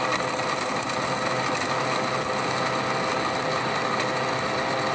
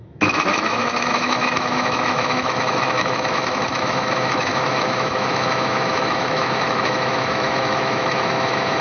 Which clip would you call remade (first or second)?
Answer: second